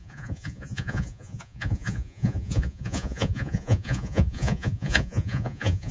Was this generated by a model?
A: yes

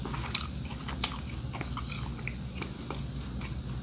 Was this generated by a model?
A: no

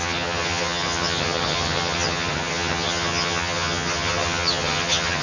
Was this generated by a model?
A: yes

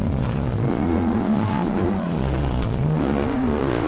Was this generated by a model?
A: yes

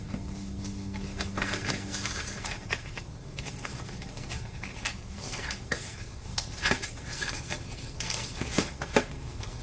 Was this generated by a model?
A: yes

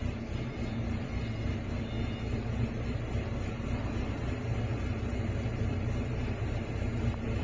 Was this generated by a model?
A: no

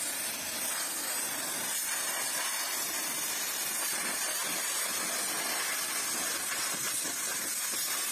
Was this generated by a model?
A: no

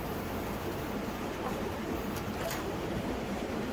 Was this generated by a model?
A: yes